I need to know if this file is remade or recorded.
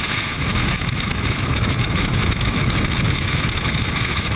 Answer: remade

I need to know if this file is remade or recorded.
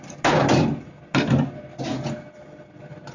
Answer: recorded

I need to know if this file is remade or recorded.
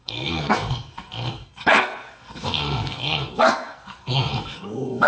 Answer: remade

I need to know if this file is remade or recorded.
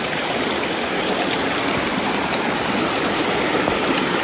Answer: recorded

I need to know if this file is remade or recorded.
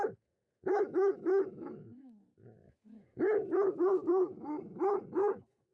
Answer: remade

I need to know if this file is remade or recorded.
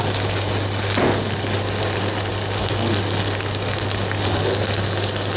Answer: recorded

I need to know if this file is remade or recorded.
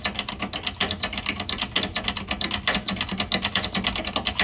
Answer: recorded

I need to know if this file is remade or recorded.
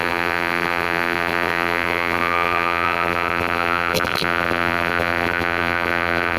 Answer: remade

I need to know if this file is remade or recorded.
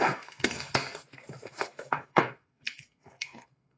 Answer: remade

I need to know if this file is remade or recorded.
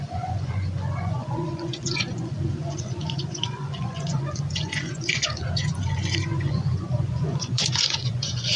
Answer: remade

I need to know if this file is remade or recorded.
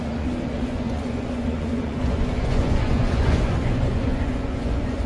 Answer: remade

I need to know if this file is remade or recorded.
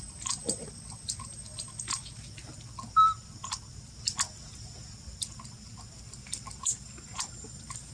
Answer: recorded